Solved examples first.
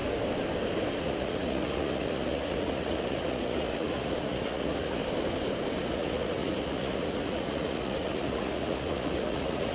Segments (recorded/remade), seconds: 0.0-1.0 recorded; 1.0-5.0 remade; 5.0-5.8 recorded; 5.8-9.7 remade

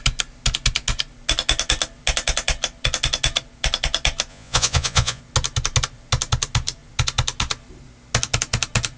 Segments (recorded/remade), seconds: 0.0-4.3 recorded; 4.3-5.2 remade; 5.2-9.0 recorded

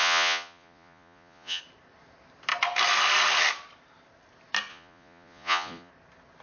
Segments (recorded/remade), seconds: 0.0-1.6 remade; 1.6-4.7 recorded; 4.7-5.9 remade; 5.9-6.4 recorded